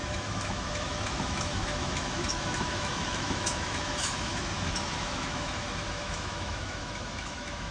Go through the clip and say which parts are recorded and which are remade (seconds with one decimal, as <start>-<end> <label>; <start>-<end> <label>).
0.0-7.7 remade